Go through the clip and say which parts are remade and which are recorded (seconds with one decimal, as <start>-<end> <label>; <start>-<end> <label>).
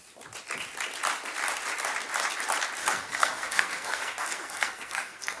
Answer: 0.0-2.8 recorded; 2.8-5.4 remade